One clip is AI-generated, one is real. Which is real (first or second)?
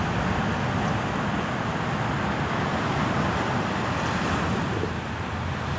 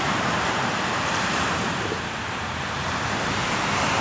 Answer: first